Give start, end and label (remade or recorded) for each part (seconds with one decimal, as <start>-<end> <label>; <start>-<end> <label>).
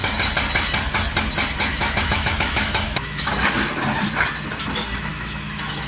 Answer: 0.0-1.7 recorded; 1.7-3.2 remade; 3.2-5.1 recorded; 5.1-5.9 remade